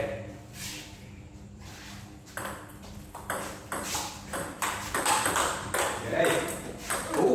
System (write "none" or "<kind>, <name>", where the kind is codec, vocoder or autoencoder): vocoder, BigVGAN v2